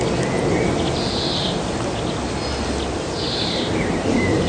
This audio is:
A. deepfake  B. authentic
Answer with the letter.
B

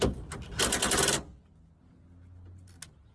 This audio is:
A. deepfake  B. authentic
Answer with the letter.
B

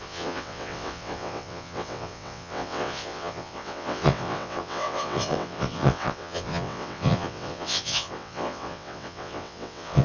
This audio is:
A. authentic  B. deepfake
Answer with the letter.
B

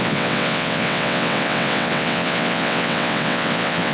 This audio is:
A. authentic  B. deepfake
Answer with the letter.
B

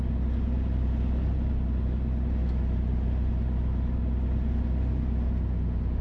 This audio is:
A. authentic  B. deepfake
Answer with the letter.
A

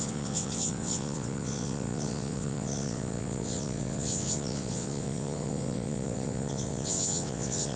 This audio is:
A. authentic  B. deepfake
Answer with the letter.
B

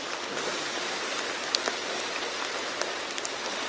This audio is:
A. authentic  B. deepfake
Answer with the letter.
A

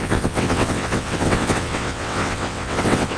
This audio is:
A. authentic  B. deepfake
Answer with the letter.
B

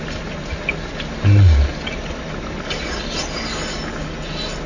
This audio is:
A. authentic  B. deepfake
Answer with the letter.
A